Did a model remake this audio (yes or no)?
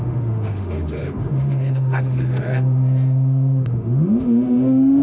yes